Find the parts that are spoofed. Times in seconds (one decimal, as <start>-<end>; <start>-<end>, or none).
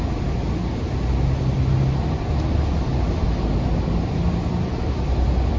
0.0-0.6; 3.1-5.6